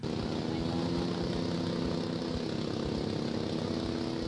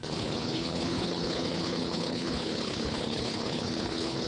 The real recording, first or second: first